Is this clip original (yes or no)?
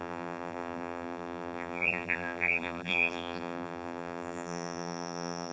no